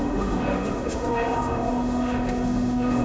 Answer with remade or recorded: remade